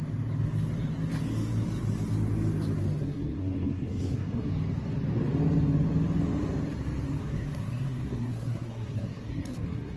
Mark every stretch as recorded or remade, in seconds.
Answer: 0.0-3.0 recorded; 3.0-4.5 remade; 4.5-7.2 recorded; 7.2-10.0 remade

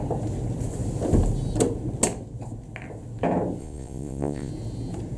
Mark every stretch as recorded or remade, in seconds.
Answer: 0.0-3.6 recorded; 3.6-4.5 remade; 4.5-5.2 recorded

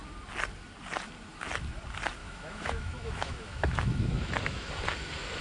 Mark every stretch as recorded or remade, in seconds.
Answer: 0.0-2.2 recorded; 2.2-4.7 remade; 4.7-5.4 recorded

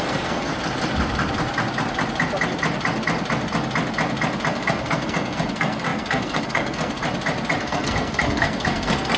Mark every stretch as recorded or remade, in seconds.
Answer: 0.0-0.5 remade; 0.5-4.5 recorded; 4.5-7.0 remade; 7.0-7.6 recorded; 7.6-9.2 remade

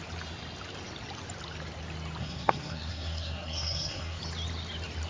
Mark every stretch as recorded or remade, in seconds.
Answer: 0.0-2.2 recorded; 2.2-4.2 remade; 4.2-5.1 recorded

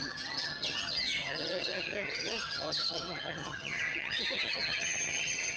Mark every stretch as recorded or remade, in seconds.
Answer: 0.0-5.6 remade

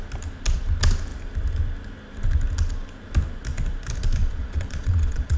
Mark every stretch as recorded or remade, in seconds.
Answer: 0.0-4.2 recorded; 4.2-5.4 remade

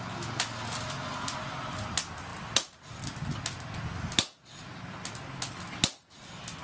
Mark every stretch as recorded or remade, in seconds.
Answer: 0.0-6.6 recorded